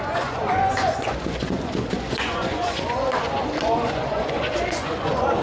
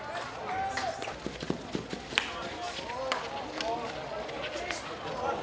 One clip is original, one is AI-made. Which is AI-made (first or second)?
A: first